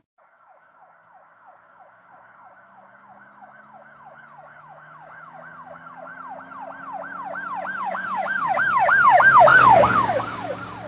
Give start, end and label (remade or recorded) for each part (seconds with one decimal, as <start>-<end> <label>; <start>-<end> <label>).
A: 0.0-6.1 remade; 6.1-7.8 recorded; 7.8-10.9 remade